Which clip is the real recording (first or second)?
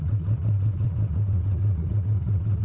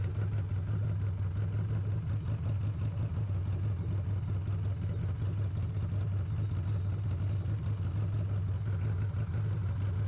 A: second